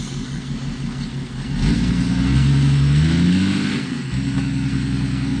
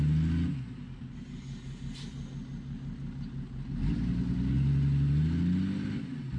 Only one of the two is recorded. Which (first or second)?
second